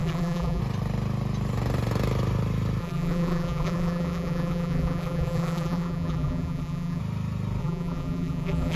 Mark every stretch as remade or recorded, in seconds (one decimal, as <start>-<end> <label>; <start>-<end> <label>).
0.0-0.6 remade; 0.6-2.8 recorded; 2.8-7.0 remade; 7.0-7.6 recorded; 7.6-8.8 remade